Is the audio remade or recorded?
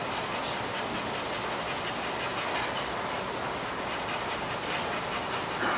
recorded